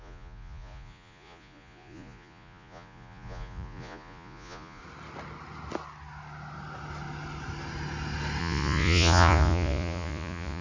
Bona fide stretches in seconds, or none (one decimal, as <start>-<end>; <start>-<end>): 4.8-8.4